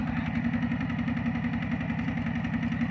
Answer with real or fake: real